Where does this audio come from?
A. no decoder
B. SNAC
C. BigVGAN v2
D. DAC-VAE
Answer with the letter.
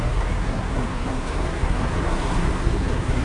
B